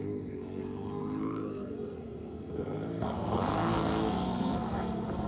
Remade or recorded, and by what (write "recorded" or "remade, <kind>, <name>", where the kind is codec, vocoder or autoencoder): remade, codec, SNAC